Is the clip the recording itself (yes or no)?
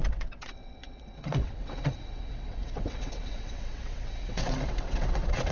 no